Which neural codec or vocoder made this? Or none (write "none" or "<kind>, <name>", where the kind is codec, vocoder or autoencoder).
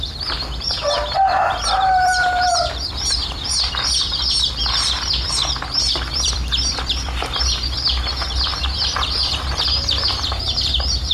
vocoder, BigVGAN v2